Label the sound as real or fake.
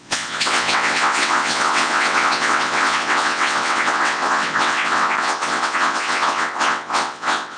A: fake